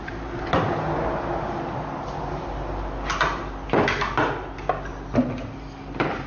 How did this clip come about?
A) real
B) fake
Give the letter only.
A